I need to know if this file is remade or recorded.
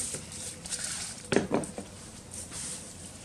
remade